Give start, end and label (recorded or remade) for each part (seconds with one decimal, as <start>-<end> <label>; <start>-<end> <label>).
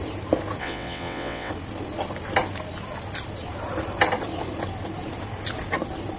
0.0-0.6 recorded; 0.6-1.5 remade; 1.5-6.2 recorded